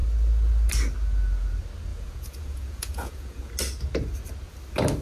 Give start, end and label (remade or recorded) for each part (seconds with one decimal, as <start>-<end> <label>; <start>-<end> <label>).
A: 0.0-1.9 recorded; 1.9-3.5 remade; 3.5-5.0 recorded